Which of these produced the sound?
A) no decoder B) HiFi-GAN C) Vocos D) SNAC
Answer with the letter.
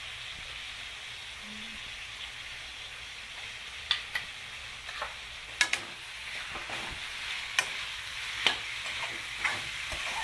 A